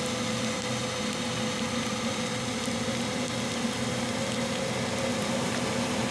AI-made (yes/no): no